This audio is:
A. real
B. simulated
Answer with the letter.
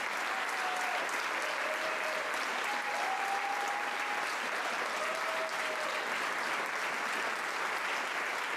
A